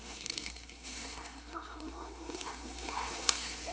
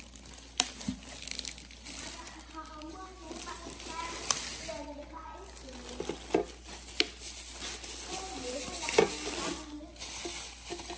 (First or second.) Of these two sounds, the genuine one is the second